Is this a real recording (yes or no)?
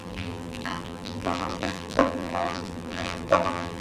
no